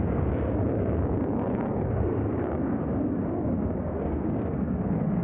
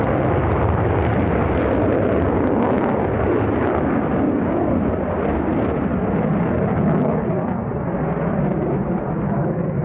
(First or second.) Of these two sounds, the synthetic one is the first